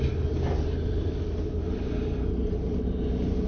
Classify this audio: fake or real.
real